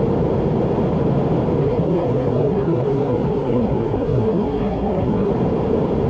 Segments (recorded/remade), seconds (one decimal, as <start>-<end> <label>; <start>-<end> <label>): 0.0-1.6 recorded; 1.6-5.3 remade; 5.3-6.1 recorded